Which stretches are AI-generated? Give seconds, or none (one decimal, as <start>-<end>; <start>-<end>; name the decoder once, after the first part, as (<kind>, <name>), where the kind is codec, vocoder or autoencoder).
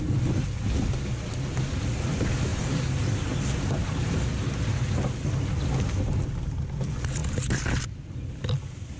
2.5-4.2 (vocoder, BigVGAN v2)